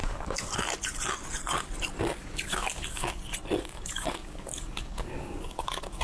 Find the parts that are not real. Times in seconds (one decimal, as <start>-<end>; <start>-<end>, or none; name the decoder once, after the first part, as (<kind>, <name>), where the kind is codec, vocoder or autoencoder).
0.0-0.5 (codec, DAC); 2.2-3.2; 3.6-6.0